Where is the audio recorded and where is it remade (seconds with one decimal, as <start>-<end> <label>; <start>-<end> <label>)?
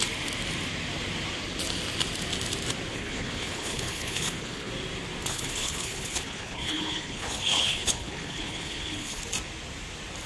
0.0-2.9 recorded; 2.9-4.7 remade; 4.7-5.3 recorded; 5.3-9.2 remade; 9.2-10.3 recorded